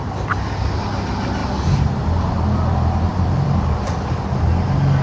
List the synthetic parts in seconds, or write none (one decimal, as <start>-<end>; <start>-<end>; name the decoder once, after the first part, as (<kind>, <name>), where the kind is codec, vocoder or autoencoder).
0.0-0.5 (vocoder, BigVGAN v2); 3.1-3.9